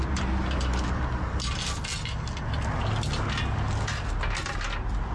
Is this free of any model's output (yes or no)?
yes